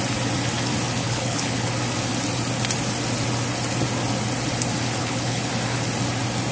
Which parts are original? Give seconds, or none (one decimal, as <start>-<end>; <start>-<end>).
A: 0.0-1.0; 1.7-5.0; 5.5-6.5